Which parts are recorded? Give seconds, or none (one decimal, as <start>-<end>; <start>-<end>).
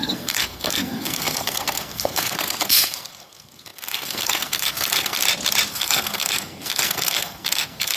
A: 5.2-5.7